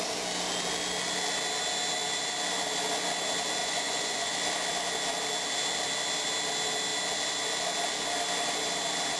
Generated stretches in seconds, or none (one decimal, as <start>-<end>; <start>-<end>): 3.6-4.3